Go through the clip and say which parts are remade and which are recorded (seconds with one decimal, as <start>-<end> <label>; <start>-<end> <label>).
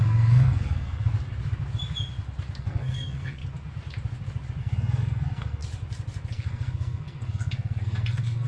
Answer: 0.0-1.1 remade; 1.1-2.6 recorded; 2.6-3.4 remade; 3.4-4.6 recorded; 4.6-5.6 remade; 5.6-6.3 recorded; 6.3-8.5 remade